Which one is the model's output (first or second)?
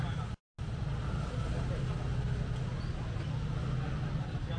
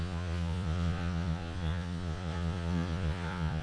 second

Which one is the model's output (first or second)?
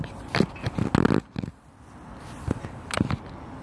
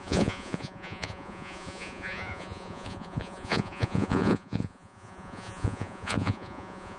second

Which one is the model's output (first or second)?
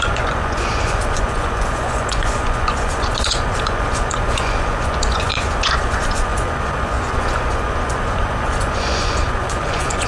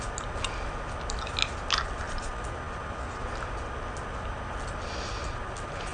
first